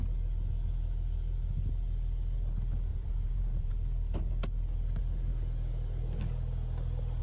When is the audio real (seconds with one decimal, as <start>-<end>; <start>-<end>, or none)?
0.0-2.9; 3.7-7.2